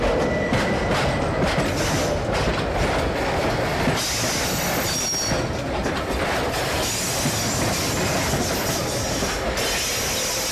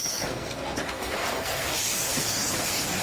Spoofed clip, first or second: second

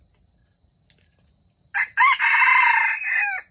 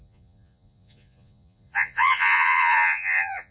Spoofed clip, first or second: second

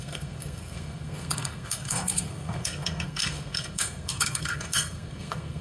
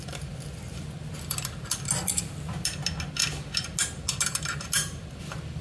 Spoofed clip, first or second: first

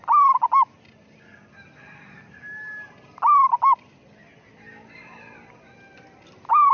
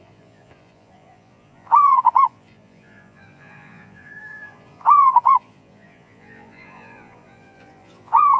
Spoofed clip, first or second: second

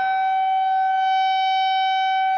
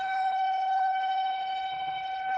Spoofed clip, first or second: second